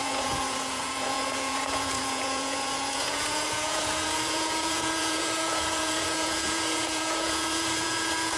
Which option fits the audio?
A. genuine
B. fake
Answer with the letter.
B